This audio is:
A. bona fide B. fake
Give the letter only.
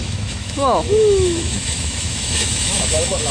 B